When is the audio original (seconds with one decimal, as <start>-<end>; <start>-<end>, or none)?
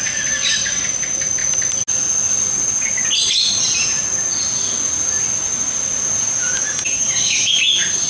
0.0-8.1